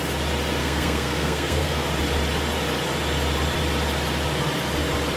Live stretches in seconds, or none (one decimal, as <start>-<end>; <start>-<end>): 0.0-0.6; 1.9-5.2